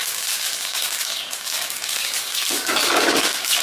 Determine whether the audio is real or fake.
fake